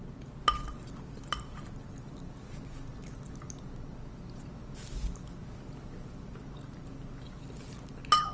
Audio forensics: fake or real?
real